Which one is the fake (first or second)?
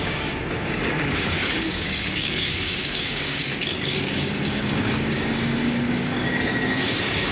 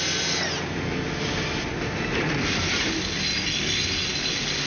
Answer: first